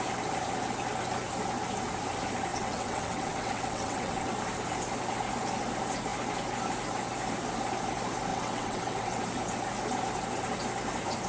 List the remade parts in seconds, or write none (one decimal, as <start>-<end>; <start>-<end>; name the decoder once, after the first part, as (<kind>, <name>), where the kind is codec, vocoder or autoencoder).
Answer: 2.5-4.3 (vocoder, WaveNeXt); 8.3-9.2